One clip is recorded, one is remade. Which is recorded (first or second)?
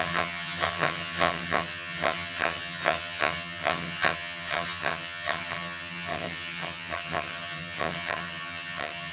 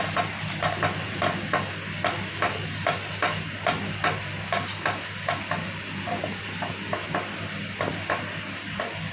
second